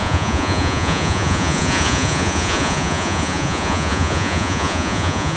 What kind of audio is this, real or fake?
fake